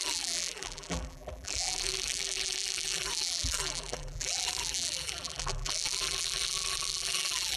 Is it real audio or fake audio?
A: fake